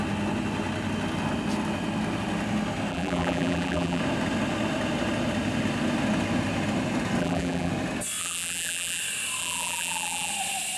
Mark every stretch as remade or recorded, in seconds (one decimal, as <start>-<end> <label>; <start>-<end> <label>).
0.0-2.9 recorded; 2.9-4.0 remade; 4.0-7.2 recorded; 7.2-7.7 remade; 7.7-8.2 recorded; 8.2-9.0 remade; 9.0-9.4 recorded; 9.4-10.3 remade; 10.3-10.8 recorded